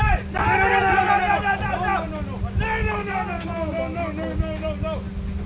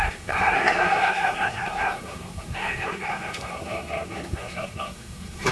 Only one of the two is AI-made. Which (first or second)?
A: second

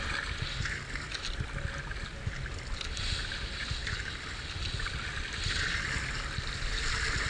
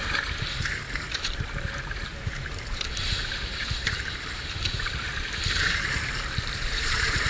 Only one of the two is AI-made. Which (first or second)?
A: second